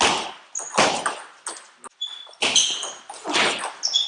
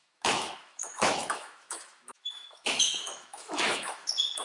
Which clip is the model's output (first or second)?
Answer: second